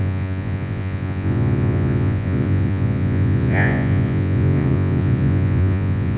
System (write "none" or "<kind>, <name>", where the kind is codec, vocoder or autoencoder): vocoder, Vocos